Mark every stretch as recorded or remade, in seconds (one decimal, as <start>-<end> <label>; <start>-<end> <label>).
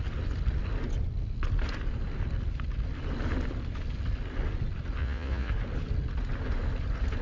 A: 0.0-5.0 recorded; 5.0-5.5 remade; 5.5-7.2 recorded